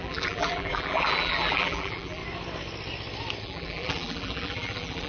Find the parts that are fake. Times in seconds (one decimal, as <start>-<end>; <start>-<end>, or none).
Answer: 0.0-2.2; 3.4-5.1

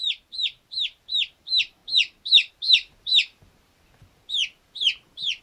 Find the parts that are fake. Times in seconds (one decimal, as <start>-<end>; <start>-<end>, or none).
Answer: 0.0-5.4

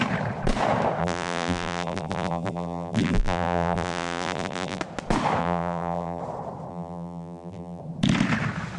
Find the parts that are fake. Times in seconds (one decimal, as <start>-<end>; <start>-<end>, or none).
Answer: 1.0-4.8; 5.4-6.2; 6.7-7.8

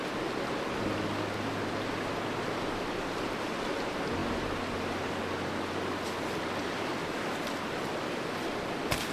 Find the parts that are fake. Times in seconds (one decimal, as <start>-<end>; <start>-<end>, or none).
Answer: none

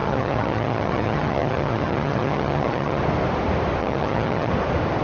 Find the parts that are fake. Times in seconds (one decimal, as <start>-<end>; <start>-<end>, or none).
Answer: 0.0-3.0; 3.8-4.5

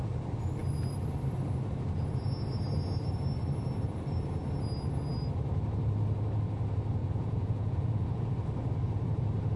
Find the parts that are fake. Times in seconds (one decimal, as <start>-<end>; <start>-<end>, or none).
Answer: 7.0-8.3

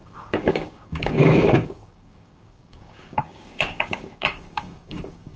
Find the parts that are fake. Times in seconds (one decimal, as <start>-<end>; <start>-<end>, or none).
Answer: 0.0-5.4